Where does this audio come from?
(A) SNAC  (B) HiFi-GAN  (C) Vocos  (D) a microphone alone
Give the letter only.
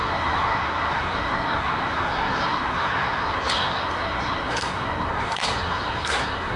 A